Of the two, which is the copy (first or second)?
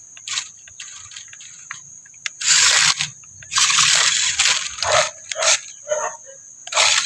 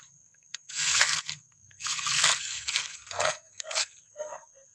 second